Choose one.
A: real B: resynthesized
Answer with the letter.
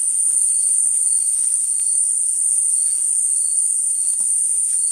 A